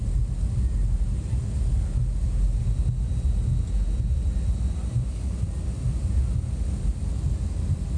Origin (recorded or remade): recorded